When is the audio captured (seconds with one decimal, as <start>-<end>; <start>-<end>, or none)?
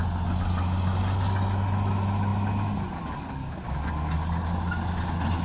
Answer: 0.0-3.4; 3.9-5.4